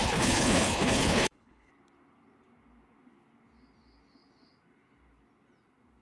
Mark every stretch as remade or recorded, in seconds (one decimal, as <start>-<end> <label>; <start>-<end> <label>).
0.0-1.7 remade; 1.7-6.0 recorded

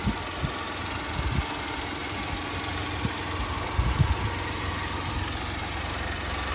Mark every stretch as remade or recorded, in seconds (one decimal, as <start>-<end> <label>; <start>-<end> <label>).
0.0-6.5 recorded

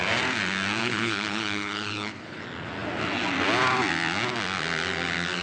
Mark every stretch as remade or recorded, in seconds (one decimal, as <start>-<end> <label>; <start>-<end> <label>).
0.0-0.8 recorded; 0.8-2.4 remade; 2.4-5.4 recorded

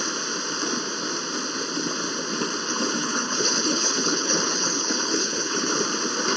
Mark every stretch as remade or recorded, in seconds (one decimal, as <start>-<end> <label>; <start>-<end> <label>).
0.0-3.0 recorded; 3.0-5.7 remade; 5.7-6.4 recorded

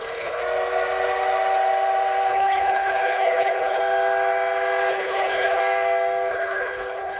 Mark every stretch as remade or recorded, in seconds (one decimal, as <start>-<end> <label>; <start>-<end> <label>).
0.0-0.4 remade; 0.4-2.3 recorded; 2.3-3.8 remade; 3.8-4.9 recorded; 4.9-5.6 remade; 5.6-6.3 recorded; 6.3-7.2 remade

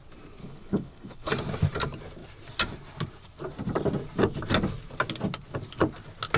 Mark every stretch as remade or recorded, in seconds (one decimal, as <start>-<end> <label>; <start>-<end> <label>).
0.0-0.4 recorded; 0.4-1.3 remade; 1.3-6.4 recorded

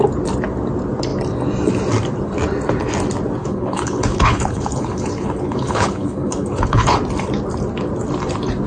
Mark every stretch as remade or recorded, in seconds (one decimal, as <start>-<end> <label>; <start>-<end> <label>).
0.0-3.4 recorded; 3.4-7.0 remade; 7.0-8.7 recorded

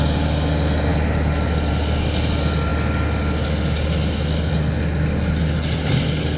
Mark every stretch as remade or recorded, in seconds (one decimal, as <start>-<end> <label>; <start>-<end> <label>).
0.0-6.4 recorded